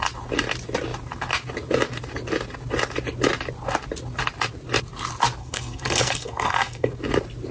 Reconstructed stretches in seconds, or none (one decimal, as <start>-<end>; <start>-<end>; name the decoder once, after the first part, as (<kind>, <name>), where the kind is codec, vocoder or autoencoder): 5.4-6.9 (codec, SNAC)